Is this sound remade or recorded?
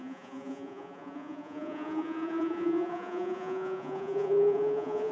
remade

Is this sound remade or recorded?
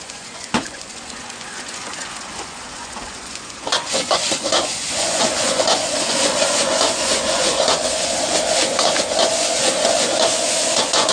remade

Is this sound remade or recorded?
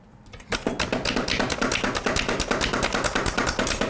recorded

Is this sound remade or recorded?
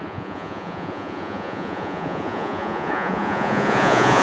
remade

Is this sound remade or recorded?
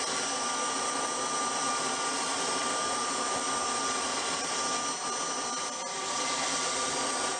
recorded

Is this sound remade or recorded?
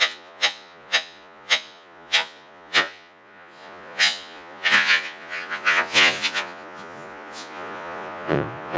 remade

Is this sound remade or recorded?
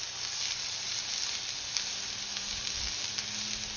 recorded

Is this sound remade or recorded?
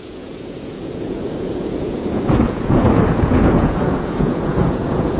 remade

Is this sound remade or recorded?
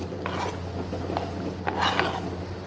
recorded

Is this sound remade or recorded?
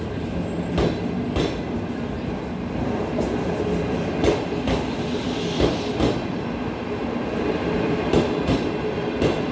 recorded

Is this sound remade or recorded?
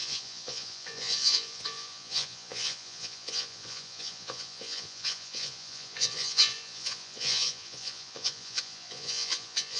remade